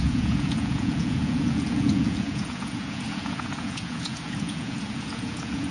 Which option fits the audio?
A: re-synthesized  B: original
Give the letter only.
A